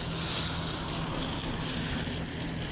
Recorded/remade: recorded